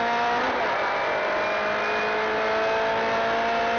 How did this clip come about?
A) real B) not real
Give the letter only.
A